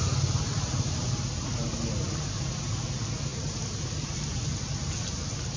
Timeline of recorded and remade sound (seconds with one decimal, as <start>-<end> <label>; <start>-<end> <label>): 0.0-5.6 recorded